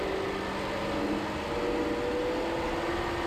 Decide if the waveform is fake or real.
real